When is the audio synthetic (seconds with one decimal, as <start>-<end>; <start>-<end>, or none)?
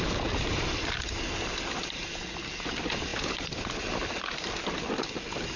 none